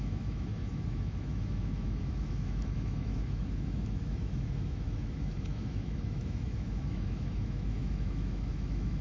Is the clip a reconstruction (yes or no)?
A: yes